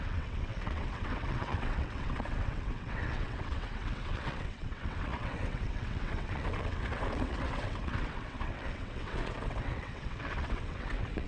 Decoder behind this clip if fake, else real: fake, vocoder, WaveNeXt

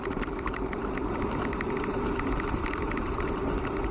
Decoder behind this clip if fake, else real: fake, vocoder, BigVGAN v2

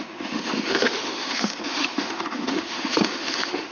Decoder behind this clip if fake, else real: fake, autoencoder, DAC-VAE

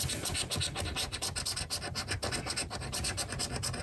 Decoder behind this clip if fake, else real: real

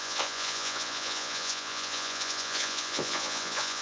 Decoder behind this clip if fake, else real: fake, vocoder, Vocos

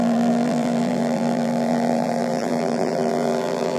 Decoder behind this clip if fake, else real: fake, vocoder, BigVGAN v2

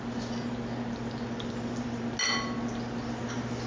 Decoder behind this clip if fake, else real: real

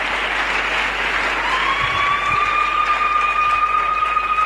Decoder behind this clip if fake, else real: real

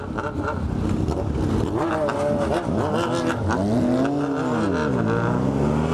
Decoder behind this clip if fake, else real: real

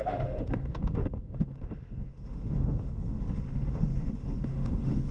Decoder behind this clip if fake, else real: fake, autoencoder, DAC-VAE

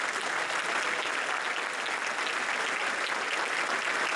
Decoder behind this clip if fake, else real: real